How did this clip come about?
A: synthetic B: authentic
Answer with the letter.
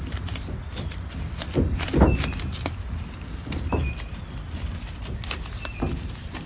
B